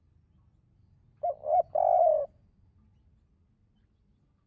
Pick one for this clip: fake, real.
real